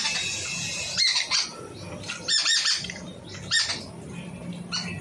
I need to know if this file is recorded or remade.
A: recorded